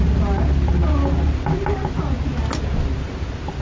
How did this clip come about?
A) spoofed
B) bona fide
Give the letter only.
B